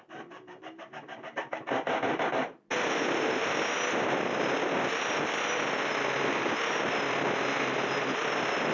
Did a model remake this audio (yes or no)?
no